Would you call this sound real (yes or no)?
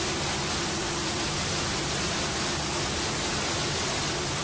yes